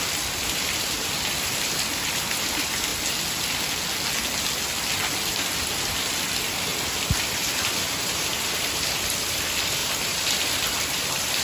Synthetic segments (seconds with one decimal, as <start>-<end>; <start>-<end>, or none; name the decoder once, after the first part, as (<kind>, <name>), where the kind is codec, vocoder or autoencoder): 0.0-2.9 (vocoder, BigVGAN v2); 6.1-6.7; 7.2-11.4